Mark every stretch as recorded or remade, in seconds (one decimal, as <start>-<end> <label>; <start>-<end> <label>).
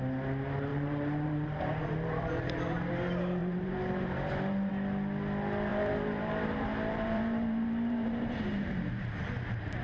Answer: 0.0-0.7 recorded; 0.7-2.9 remade; 2.9-3.4 recorded; 3.4-4.7 remade; 4.7-5.7 recorded; 5.7-8.9 remade; 8.9-9.8 recorded